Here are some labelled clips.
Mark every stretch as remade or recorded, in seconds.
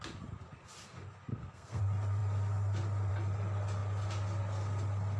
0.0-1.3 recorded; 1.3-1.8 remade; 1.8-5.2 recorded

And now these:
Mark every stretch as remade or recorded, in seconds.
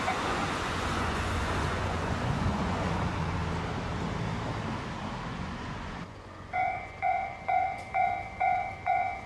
0.0-3.4 remade; 3.4-5.3 recorded; 5.3-9.3 remade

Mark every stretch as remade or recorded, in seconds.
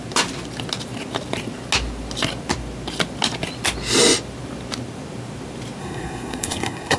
0.0-5.8 recorded; 5.8-7.0 remade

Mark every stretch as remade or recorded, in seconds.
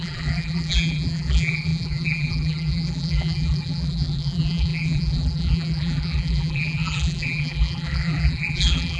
0.0-9.0 remade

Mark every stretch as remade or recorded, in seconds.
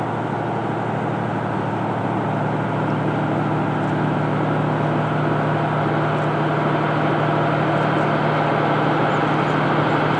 0.0-10.2 recorded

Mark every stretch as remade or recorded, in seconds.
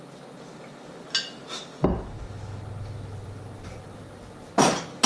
0.0-3.1 recorded; 3.1-4.5 remade; 4.5-5.1 recorded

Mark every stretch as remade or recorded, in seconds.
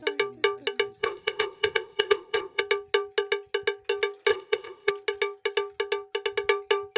0.0-1.0 recorded; 1.0-2.6 remade; 2.6-4.3 recorded; 4.3-4.9 remade; 4.9-7.0 recorded